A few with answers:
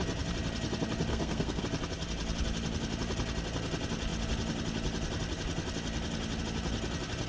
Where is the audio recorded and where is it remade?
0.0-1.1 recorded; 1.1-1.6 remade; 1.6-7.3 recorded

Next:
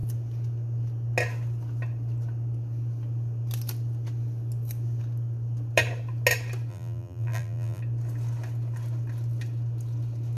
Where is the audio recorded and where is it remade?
0.0-6.7 recorded; 6.7-7.8 remade; 7.8-10.4 recorded